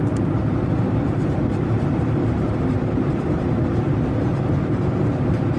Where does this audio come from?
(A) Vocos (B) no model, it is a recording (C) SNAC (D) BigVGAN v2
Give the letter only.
D